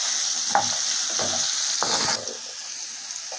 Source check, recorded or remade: recorded